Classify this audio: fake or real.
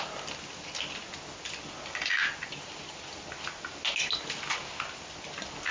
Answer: real